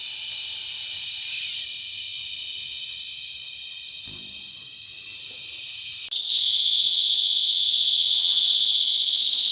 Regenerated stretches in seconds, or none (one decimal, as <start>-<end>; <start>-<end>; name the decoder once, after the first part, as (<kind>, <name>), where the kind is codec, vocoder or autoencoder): 6.2-9.5 (vocoder, Vocos)